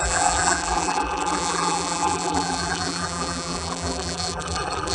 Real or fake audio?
fake